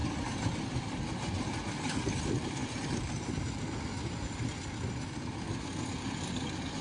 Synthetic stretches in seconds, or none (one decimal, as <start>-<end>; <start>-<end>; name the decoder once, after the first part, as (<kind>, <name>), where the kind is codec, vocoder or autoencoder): none